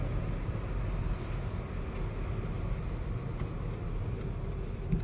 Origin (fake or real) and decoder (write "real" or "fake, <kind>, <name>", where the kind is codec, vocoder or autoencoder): real